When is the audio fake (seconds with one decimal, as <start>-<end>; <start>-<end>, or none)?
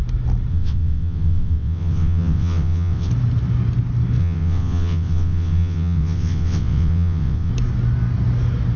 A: 0.5-3.1; 4.2-7.5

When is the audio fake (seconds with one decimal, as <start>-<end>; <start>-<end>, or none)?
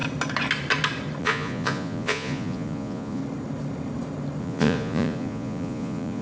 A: 1.2-3.2; 4.4-6.2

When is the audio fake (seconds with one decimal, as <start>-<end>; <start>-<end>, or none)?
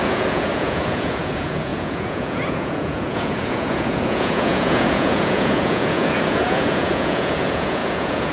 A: 0.0-8.3